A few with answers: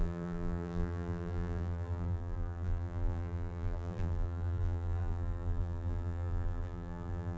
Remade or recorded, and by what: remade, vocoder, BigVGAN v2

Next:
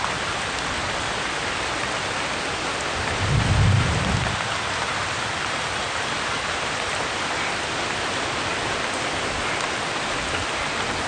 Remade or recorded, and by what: remade, vocoder, BigVGAN v2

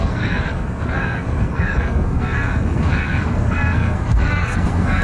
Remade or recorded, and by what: remade, codec, SNAC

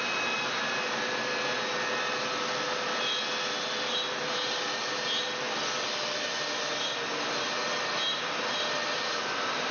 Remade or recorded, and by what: recorded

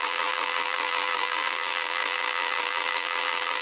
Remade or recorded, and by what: remade, vocoder, BigVGAN v2